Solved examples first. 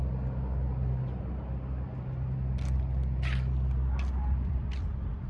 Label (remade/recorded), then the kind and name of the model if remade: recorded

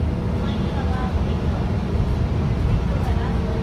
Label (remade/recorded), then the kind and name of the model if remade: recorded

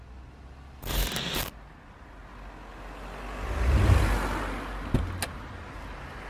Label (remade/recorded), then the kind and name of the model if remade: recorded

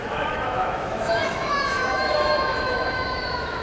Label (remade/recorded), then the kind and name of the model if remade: remade, autoencoder, DAC-VAE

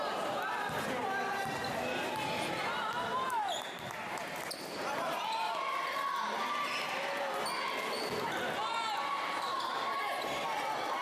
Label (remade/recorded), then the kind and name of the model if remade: recorded